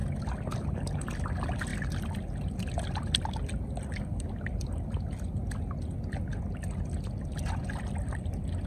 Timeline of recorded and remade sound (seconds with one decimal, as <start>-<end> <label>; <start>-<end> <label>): 0.0-8.7 recorded